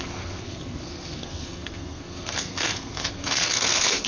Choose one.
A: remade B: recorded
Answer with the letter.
A